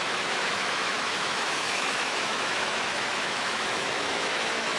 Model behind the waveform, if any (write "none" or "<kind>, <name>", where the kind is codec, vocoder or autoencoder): autoencoder, DAC-VAE